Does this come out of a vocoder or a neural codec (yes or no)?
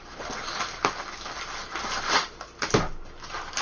no